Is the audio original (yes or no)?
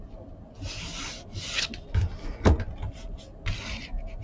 yes